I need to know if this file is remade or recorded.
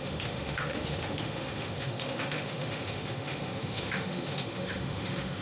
remade